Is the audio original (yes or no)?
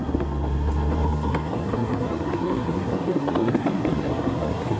no